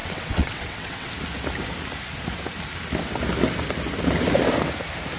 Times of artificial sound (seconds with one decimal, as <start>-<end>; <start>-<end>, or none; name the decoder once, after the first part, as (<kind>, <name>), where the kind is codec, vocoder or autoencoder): 0.0-1.1 (vocoder, WaveNeXt)